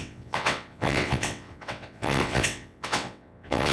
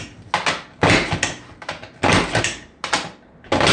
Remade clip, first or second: first